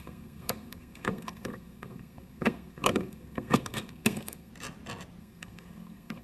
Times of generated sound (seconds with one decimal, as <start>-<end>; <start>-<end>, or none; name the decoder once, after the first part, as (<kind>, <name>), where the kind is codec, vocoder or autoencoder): 0.0-4.5 (codec, SNAC); 5.2-6.2